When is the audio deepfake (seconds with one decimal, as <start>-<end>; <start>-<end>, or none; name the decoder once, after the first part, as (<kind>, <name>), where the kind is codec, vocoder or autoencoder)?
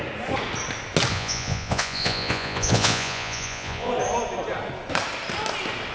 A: 1.1-3.9 (vocoder, Vocos)